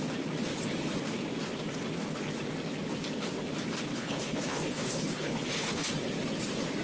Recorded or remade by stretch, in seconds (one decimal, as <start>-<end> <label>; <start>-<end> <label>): 0.0-3.9 recorded; 3.9-5.9 remade; 5.9-6.8 recorded